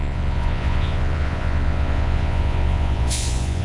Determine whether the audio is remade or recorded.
remade